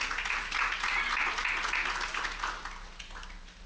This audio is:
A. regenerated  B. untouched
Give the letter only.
B